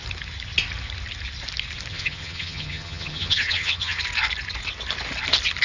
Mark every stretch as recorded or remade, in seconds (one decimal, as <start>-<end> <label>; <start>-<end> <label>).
0.0-1.9 recorded; 1.9-4.0 remade; 4.0-5.6 recorded